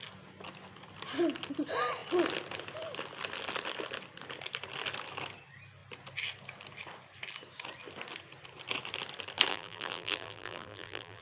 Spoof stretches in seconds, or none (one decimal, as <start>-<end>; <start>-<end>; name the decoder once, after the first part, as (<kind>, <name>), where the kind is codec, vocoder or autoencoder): 9.5-11.2 (vocoder, BigVGAN v2)